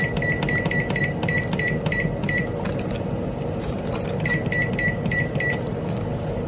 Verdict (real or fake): real